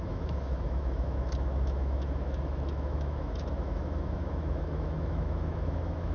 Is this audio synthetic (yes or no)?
yes